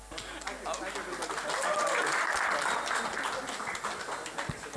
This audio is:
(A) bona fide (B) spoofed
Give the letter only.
A